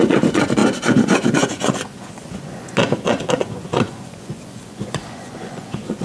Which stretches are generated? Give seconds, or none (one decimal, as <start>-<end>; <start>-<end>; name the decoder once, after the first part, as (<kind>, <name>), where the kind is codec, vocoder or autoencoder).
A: 0.0-6.0 (vocoder, Vocos)